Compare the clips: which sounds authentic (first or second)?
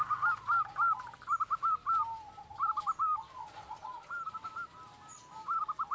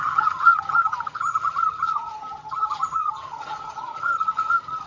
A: first